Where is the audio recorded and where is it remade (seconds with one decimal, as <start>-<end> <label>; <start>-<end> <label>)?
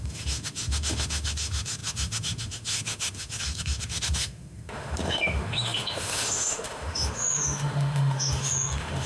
0.0-9.1 remade